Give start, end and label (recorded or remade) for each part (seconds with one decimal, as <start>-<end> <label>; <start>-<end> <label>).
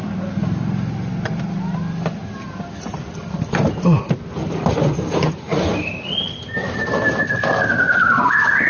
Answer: 0.0-2.2 recorded; 2.2-3.7 remade; 3.7-5.5 recorded; 5.5-6.0 remade; 6.0-8.7 recorded